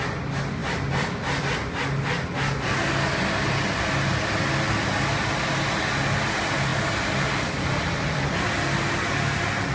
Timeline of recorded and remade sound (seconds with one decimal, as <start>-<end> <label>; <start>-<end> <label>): 0.0-9.7 recorded